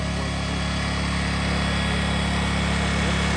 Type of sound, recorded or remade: recorded